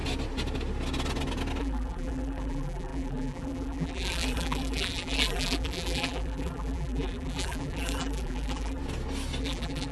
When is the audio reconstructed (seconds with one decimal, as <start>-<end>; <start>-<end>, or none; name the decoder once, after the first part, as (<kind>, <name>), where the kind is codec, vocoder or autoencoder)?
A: 1.6-8.8 (vocoder, BigVGAN v2); 9.4-9.9